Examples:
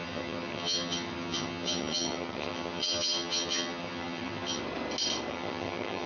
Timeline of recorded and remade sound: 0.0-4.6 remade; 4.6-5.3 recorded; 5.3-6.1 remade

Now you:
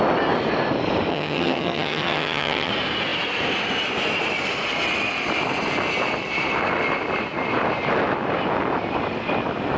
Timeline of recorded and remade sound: 0.0-1.1 recorded; 1.1-2.7 remade; 2.7-9.8 recorded

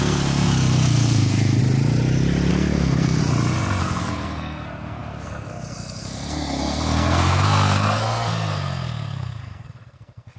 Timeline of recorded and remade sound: 0.0-1.6 remade; 1.6-2.5 recorded; 2.5-3.2 remade; 3.2-3.8 recorded; 3.8-10.4 remade

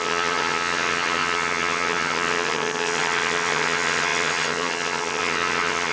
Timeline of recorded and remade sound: 0.0-5.9 remade

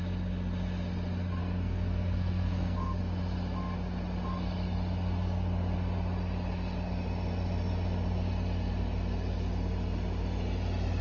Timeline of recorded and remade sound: 0.0-1.4 recorded; 1.4-3.0 remade; 3.0-11.0 recorded